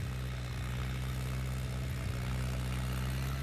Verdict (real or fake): real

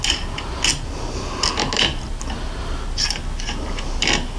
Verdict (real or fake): real